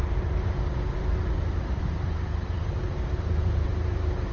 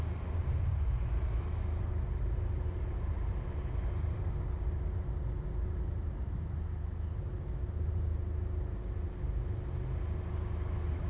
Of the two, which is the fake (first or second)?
first